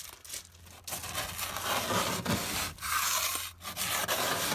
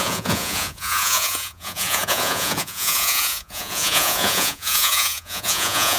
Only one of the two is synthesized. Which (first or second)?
second